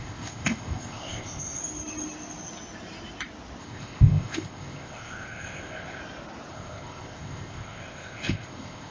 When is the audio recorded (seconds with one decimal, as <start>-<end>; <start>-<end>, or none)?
1.6-3.6; 6.0-6.5